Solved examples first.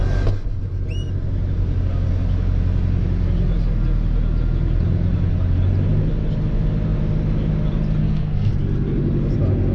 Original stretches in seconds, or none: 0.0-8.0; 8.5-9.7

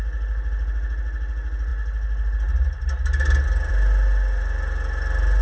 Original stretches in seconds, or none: 0.0-5.4